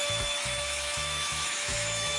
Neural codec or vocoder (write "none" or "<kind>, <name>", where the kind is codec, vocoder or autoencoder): autoencoder, DAC-VAE